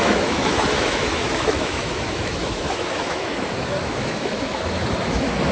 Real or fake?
fake